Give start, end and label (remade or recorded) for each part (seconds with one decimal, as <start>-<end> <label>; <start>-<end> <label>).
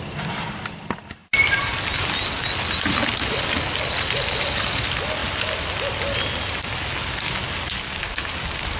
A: 0.0-5.2 recorded; 5.2-6.1 remade; 6.1-8.8 recorded